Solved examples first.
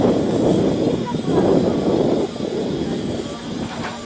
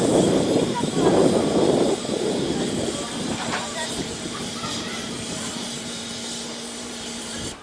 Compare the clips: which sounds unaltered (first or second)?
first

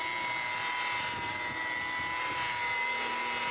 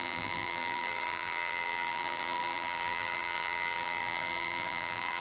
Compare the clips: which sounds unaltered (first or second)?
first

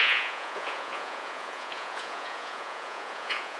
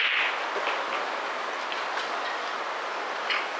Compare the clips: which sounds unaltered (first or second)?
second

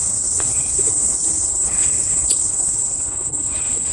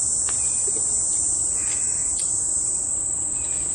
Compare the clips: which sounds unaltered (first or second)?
second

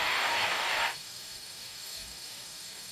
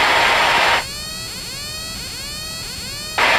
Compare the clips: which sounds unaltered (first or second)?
second